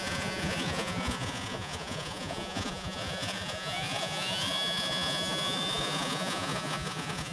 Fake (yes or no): yes